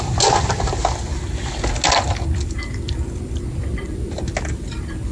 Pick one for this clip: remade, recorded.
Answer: recorded